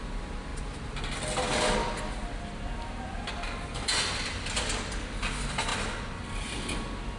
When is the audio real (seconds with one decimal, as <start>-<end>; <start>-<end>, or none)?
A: 0.0-7.2